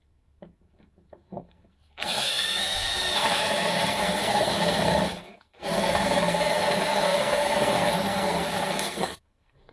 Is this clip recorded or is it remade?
remade